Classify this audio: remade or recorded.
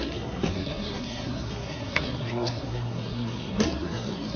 remade